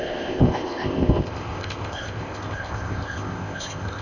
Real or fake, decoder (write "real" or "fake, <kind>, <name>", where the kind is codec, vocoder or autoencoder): fake, codec, ZipCodec